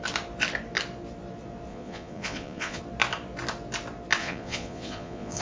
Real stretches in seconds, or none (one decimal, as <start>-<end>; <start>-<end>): 0.0-1.7; 2.8-4.2